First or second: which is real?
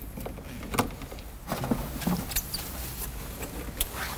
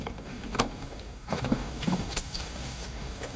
first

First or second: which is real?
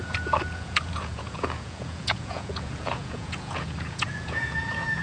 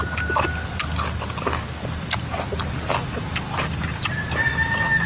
second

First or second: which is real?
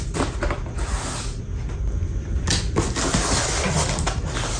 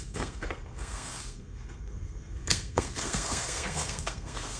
first